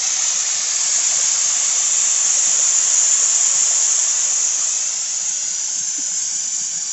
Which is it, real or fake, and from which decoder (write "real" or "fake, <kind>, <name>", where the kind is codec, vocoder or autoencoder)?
real